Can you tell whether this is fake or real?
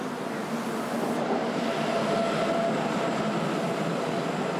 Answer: real